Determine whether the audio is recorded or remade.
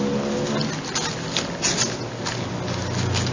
recorded